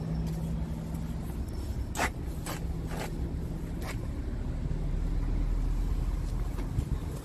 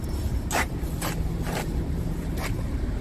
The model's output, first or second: second